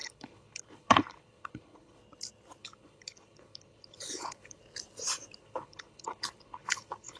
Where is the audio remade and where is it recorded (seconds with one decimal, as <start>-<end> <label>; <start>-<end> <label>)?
0.0-2.0 remade; 2.0-2.6 recorded; 2.6-4.6 remade; 4.6-5.4 recorded; 5.4-7.2 remade